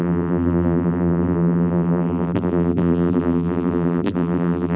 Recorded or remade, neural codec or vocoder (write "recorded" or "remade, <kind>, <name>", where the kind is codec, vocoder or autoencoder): remade, vocoder, BigVGAN v2